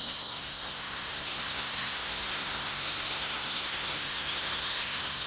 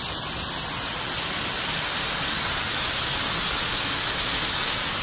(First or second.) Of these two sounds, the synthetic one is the first